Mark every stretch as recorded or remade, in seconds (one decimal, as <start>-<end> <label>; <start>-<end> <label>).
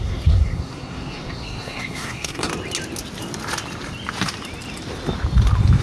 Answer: 0.0-2.5 remade; 2.5-5.8 recorded